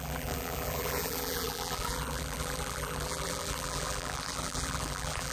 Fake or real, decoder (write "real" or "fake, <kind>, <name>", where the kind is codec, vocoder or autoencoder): fake, vocoder, BigVGAN v2